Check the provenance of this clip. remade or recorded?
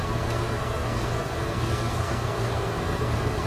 remade